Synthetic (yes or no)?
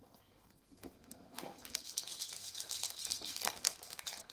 yes